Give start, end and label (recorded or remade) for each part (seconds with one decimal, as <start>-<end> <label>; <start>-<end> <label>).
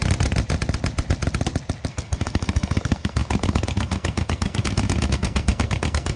0.0-1.9 recorded; 1.9-6.2 remade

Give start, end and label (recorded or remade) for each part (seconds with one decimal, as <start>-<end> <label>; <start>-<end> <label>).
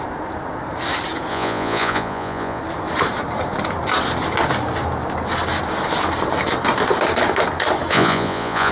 0.0-1.3 recorded; 1.3-2.6 remade; 2.6-7.9 recorded; 7.9-8.7 remade